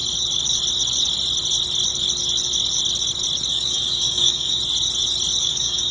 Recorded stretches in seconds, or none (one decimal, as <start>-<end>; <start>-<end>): 0.0-3.5; 4.6-5.4